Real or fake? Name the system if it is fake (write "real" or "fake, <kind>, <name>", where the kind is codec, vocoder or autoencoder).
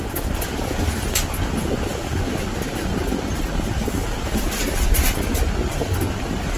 real